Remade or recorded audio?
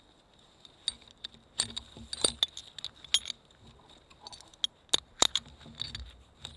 recorded